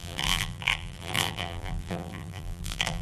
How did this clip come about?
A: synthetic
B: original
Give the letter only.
A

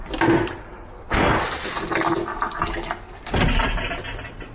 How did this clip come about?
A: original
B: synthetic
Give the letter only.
A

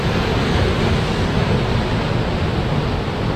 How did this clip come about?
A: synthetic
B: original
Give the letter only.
B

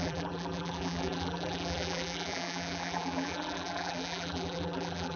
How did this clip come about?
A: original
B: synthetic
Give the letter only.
B